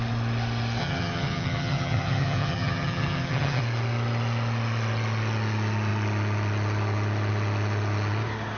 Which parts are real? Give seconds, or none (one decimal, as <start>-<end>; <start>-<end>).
0.0-0.8; 3.6-8.6